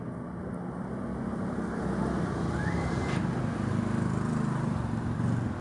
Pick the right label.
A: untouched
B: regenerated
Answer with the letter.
A